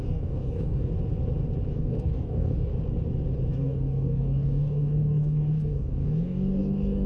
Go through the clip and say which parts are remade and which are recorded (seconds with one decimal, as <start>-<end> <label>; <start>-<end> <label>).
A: 0.0-0.9 remade; 0.9-1.7 recorded; 1.7-2.7 remade; 2.7-3.5 recorded; 3.5-7.1 remade